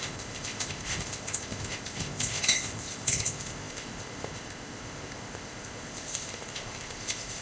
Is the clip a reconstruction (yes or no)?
yes